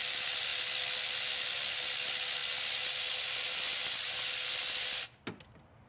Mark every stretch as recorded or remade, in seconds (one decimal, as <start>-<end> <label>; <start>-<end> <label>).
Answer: 0.0-5.9 recorded